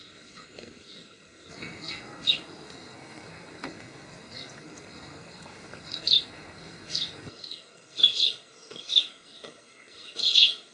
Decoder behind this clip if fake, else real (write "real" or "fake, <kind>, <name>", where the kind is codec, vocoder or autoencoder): fake, codec, SNAC